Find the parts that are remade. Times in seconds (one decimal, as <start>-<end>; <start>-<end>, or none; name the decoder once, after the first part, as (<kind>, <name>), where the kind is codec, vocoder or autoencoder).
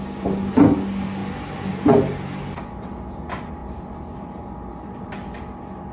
1.2-1.7 (vocoder, BigVGAN v2)